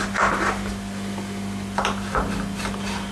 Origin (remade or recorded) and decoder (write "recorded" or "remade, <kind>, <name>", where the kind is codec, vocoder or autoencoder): recorded